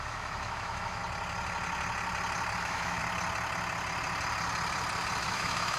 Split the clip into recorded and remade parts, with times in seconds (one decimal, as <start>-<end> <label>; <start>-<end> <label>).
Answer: 0.0-1.0 remade; 1.0-2.6 recorded; 2.6-3.0 remade; 3.0-5.2 recorded; 5.2-5.8 remade